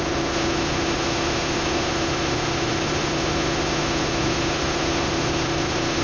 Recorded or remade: remade